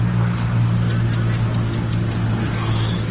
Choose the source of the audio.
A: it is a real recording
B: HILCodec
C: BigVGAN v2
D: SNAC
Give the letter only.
A